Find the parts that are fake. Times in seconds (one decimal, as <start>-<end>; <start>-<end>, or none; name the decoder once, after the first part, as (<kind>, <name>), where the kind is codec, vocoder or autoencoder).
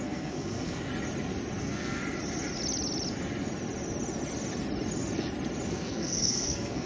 0.0-0.9 (codec, SNAC); 1.6-2.0; 5.7-6.9